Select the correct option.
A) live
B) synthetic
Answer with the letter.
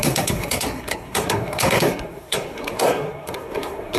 B